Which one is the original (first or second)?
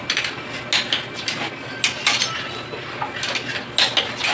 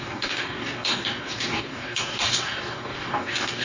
first